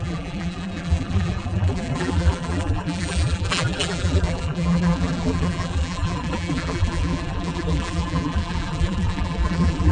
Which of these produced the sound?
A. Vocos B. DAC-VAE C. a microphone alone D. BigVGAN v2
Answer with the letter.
D